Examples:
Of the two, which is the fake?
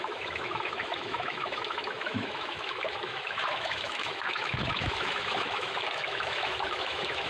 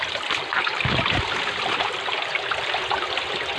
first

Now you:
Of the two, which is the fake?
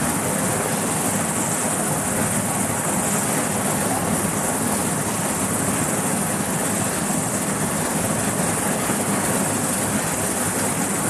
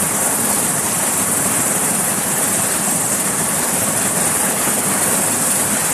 second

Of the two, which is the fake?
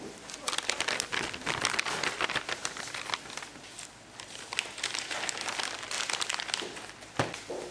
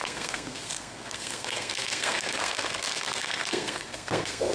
second